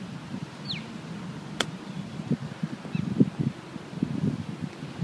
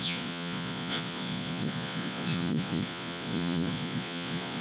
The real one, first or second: first